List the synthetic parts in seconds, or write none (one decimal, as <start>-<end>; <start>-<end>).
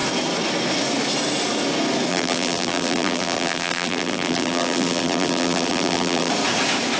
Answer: 2.1-6.3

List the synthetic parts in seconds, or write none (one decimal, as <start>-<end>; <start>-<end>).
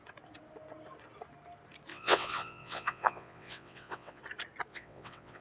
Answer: 1.9-4.2; 4.7-5.4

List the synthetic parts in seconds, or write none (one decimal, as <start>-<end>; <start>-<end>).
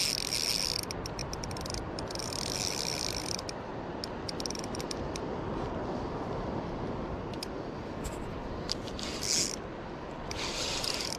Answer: none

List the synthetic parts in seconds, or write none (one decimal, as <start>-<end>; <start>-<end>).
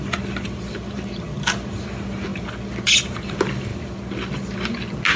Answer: 0.7-1.8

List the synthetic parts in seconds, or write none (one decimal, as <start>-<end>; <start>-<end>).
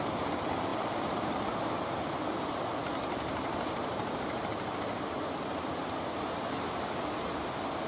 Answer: none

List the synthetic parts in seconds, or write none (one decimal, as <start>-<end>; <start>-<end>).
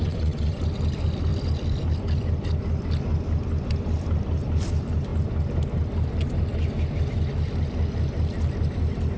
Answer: 0.0-0.6